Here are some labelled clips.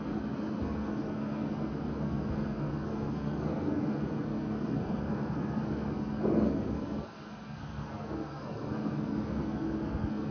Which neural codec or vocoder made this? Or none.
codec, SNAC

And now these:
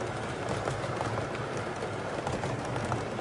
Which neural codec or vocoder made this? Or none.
none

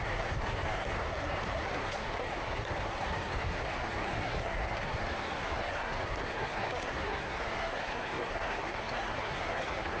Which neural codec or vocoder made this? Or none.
codec, SNAC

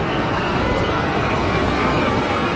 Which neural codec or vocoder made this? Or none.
codec, SNAC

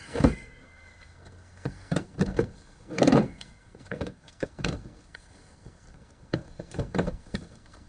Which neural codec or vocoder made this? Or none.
codec, SNAC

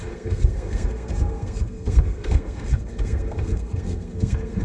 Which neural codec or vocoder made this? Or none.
codec, SNAC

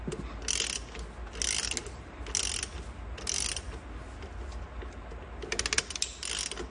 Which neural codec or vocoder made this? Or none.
none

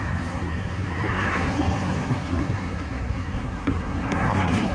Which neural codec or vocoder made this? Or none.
codec, SNAC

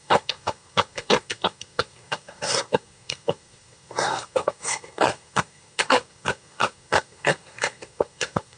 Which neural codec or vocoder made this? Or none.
codec, SNAC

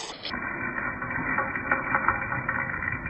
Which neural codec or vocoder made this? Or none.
none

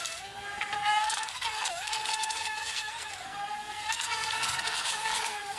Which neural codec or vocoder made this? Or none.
codec, SNAC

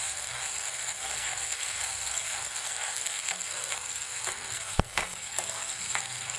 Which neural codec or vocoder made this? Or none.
codec, SNAC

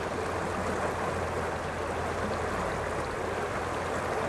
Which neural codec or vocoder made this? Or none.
none